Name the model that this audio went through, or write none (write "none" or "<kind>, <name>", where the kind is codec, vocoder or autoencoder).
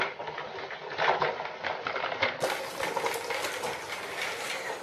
none